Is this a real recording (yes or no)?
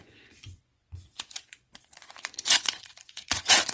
no